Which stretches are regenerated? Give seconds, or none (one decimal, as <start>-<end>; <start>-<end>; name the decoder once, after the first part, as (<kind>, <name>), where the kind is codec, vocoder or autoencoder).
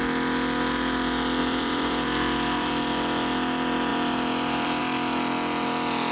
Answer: 1.4-2.8 (vocoder, BigVGAN v2); 3.9-4.8